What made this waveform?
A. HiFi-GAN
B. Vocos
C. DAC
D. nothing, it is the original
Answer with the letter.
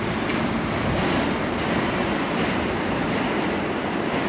D